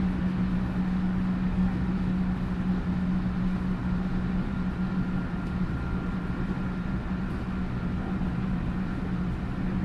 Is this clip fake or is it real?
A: real